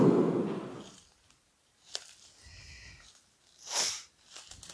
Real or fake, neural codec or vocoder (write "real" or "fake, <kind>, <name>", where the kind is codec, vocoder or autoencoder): real